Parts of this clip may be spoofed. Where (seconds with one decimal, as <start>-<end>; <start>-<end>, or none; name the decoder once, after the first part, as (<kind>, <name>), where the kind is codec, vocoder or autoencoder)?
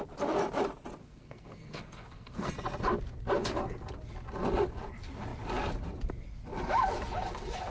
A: 1.0-2.5 (codec, SNAC)